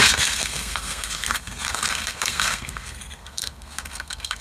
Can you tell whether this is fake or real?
fake